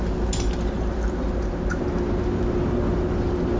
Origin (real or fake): real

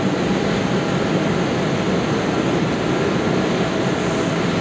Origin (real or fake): real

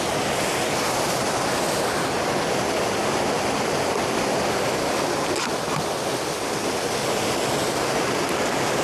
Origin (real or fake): real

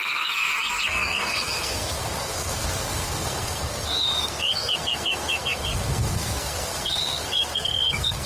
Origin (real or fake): fake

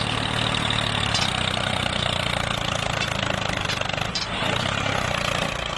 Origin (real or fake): real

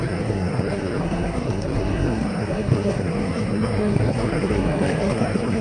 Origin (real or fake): fake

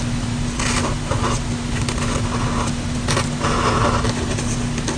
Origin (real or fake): real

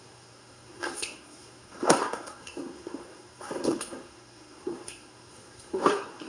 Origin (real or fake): fake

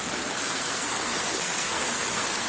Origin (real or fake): fake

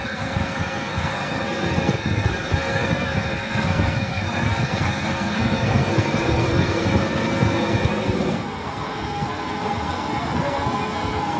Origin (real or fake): fake